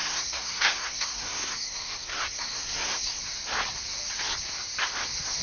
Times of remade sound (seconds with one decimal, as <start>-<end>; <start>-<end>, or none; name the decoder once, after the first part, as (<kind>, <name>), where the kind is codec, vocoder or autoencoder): 0.0-3.2 (codec, SNAC)